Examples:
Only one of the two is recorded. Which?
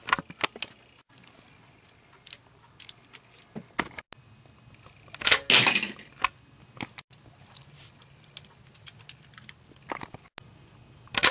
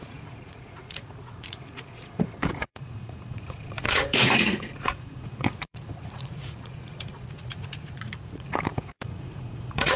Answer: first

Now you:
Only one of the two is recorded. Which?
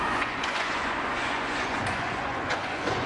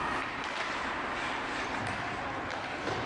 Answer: second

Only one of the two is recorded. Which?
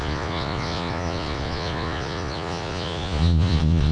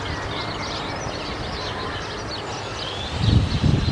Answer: second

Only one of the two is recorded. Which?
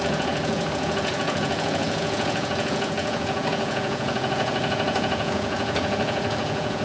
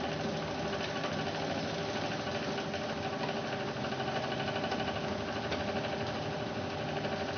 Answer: second